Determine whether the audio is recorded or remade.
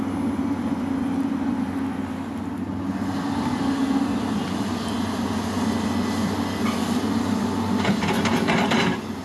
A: recorded